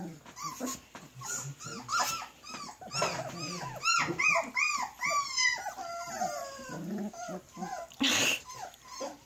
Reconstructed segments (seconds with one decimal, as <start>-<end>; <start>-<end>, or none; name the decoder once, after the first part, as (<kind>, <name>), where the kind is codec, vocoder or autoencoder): none